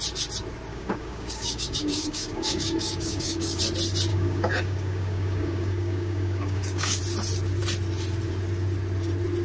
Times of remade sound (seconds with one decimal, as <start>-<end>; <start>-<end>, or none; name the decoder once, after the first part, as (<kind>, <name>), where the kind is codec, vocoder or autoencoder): 0.7-3.6 (codec, DAC); 4.1-7.0